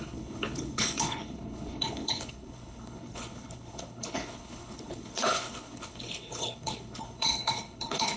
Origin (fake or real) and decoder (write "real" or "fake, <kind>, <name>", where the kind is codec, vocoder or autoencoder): fake, codec, HILCodec